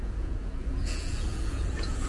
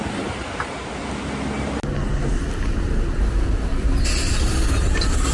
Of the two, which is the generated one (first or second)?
first